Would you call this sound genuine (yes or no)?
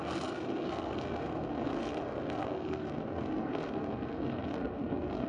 no